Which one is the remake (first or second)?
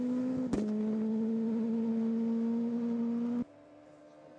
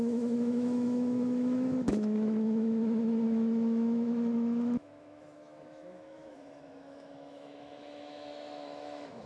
second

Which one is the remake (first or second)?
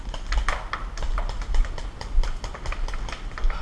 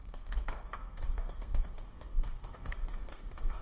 second